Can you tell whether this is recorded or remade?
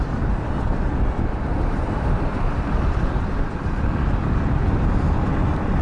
recorded